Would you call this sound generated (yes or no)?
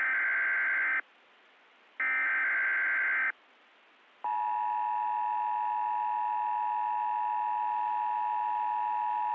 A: no